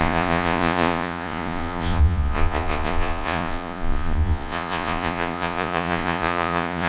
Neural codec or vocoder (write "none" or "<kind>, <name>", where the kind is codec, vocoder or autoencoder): vocoder, Vocos